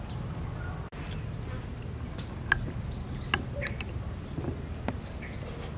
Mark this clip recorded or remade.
recorded